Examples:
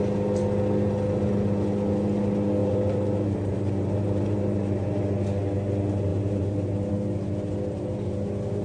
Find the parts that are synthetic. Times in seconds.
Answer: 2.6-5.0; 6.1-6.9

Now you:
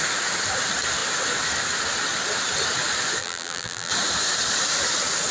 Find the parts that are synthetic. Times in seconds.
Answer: 3.2-3.9

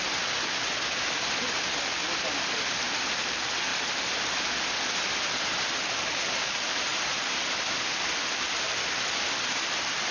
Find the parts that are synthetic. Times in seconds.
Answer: 2.0-3.1